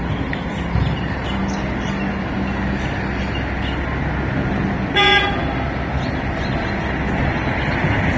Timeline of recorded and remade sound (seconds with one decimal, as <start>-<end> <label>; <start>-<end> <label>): 0.0-8.2 recorded

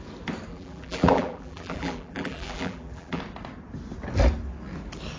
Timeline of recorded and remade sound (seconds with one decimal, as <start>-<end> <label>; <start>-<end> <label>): 0.0-0.5 recorded; 0.5-3.2 remade; 3.2-5.2 recorded

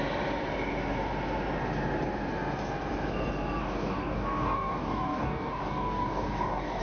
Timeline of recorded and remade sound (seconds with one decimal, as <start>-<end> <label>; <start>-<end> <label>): 0.0-3.6 recorded; 3.6-6.8 remade

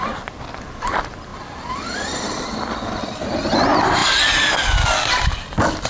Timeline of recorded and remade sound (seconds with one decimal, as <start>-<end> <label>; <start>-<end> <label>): 0.0-5.9 recorded

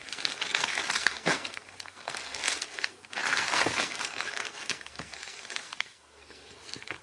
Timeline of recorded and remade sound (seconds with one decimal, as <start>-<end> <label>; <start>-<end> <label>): 0.0-7.0 remade

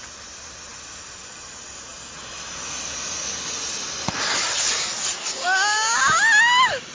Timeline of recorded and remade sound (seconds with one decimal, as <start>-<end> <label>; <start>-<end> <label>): 0.0-6.9 recorded